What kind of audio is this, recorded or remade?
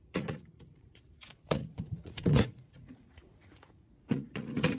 remade